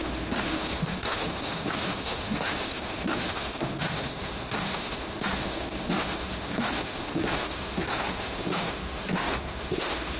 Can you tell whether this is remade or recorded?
remade